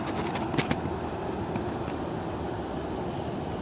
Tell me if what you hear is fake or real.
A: real